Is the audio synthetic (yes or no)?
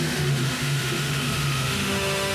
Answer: yes